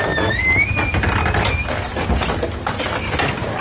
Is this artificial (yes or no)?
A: no